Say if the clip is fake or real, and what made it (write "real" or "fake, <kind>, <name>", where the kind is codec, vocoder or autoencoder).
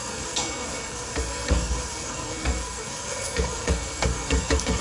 fake, codec, SNAC